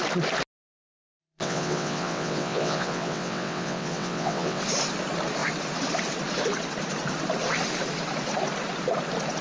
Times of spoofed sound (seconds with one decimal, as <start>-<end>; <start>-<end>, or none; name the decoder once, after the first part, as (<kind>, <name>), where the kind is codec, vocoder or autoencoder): 1.2-4.6 (vocoder, WaveNeXt)